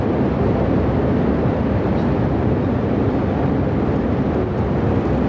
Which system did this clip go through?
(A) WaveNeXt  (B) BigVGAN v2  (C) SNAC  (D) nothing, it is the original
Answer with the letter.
B